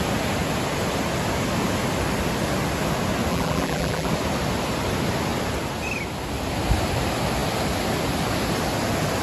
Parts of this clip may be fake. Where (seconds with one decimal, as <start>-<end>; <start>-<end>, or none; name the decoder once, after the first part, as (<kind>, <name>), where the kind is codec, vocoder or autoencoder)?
3.3-4.1 (vocoder, BigVGAN v2)